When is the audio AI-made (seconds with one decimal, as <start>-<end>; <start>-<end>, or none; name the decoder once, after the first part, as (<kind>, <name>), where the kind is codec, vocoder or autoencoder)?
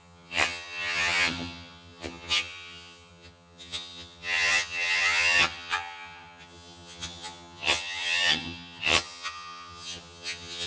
0.0-10.7 (vocoder, HiFi-GAN)